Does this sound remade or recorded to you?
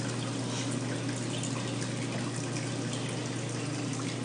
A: recorded